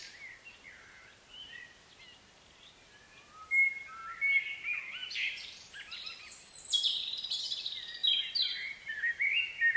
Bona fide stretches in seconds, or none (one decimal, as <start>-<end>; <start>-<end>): 0.0-5.0; 7.4-8.0; 9.1-9.8